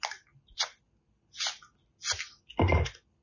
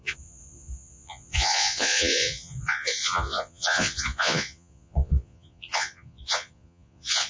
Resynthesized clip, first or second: second